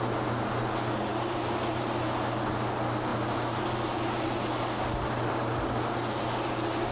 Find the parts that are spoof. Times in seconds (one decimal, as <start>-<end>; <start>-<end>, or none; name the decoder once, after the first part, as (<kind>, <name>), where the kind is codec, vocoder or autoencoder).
none